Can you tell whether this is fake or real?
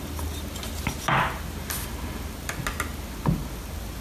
real